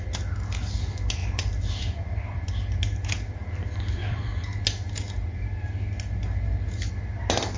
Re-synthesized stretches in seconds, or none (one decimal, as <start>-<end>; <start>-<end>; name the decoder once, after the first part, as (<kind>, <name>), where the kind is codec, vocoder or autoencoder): 1.2-2.5 (vocoder, BigVGAN v2); 3.4-4.3